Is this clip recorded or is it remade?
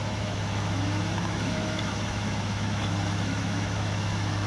remade